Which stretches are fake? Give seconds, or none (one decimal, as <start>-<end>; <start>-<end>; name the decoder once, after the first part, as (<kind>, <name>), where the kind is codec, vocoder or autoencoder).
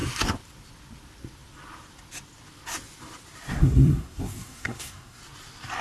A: 3.5-5.2 (codec, SNAC)